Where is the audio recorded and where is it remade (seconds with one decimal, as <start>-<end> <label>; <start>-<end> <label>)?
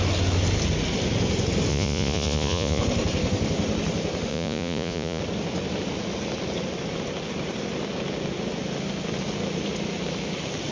0.0-1.7 recorded; 1.7-2.8 remade; 2.8-4.3 recorded; 4.3-5.2 remade; 5.2-10.7 recorded